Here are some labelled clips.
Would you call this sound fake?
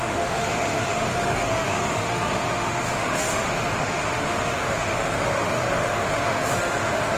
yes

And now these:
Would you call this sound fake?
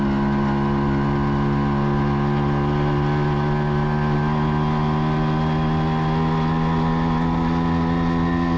no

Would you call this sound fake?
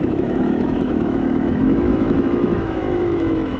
yes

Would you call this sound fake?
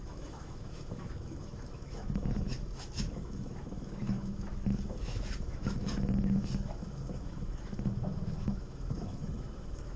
yes